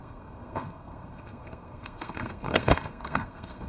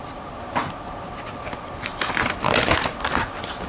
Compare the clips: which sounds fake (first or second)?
first